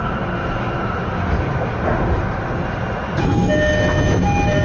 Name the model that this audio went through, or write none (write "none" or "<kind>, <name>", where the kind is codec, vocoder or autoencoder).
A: none